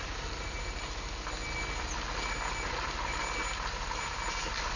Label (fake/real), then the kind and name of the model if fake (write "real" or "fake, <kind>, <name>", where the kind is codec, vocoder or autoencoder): real